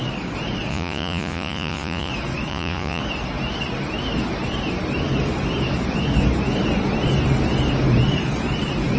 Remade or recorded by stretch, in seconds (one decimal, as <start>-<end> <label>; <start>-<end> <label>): 0.0-0.7 recorded; 0.7-2.1 remade; 2.1-2.5 recorded; 2.5-3.0 remade; 3.0-9.0 recorded